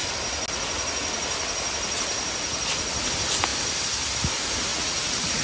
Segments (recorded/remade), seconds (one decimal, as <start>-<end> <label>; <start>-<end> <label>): 0.0-4.7 recorded; 4.7-5.4 remade